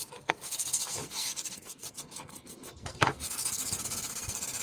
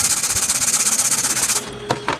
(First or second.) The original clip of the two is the second